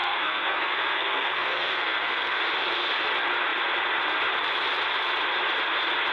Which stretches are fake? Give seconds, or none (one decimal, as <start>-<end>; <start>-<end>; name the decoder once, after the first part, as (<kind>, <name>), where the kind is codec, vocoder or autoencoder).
0.0-2.4 (codec, SNAC)